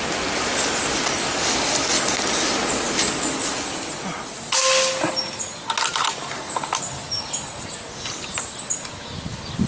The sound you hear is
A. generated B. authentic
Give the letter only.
B